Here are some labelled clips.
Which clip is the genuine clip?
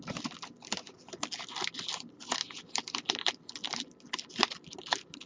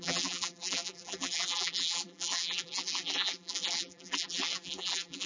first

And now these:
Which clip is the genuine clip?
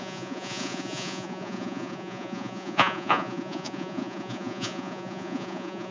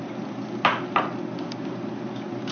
second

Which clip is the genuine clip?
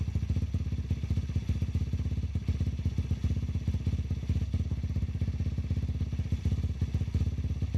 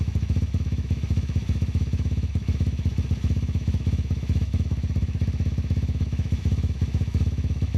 first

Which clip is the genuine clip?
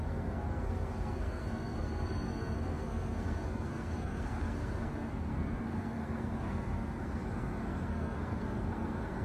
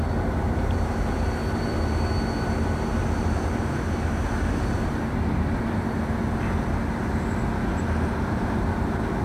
second